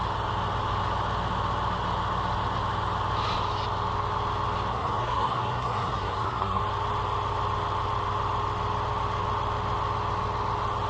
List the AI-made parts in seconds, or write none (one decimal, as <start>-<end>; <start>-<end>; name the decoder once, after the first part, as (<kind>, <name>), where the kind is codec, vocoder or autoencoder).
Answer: 4.7-6.6 (codec, SNAC)